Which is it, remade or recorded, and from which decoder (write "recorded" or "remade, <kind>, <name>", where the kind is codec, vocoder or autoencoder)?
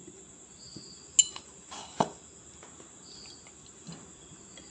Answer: recorded